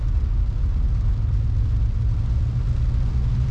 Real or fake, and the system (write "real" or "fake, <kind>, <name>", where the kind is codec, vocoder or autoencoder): real